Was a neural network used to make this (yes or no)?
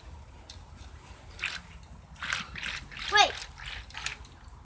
no